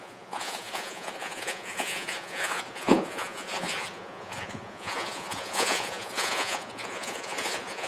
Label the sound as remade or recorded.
remade